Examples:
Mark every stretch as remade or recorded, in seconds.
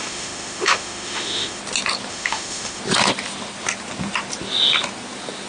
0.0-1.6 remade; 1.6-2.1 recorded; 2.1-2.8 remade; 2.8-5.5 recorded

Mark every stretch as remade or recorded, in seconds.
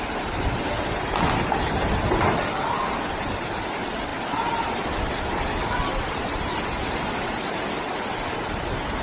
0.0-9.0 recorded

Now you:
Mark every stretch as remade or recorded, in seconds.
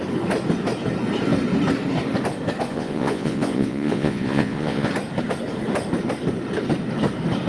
0.0-2.7 recorded; 2.7-4.9 remade; 4.9-7.5 recorded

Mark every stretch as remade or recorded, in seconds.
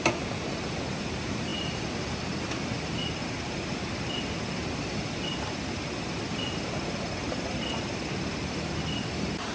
0.0-9.5 recorded